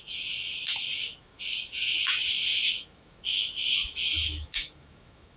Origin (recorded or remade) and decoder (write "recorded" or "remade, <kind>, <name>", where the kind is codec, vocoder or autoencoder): remade, autoencoder, DAC-VAE